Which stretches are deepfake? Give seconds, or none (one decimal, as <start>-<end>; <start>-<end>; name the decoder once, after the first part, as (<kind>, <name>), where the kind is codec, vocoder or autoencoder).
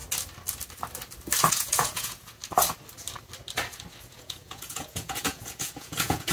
1.5-2.4 (vocoder, Vocos); 4.1-6.3